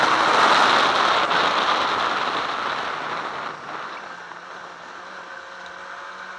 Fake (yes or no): no